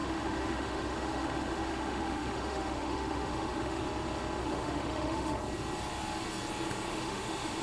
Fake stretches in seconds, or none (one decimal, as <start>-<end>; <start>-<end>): 0.0-3.8; 4.4-5.4; 6.9-7.6

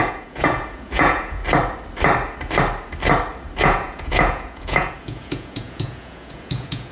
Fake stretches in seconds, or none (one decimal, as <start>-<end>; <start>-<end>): 0.0-1.4; 3.6-6.9

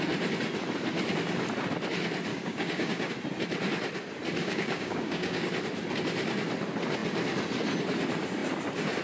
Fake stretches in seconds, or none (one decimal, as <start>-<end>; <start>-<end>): 2.3-3.1; 4.4-5.5